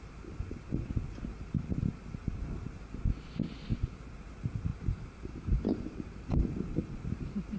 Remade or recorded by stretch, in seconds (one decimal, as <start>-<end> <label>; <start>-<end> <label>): 0.0-4.7 recorded; 4.7-6.5 remade; 6.5-7.6 recorded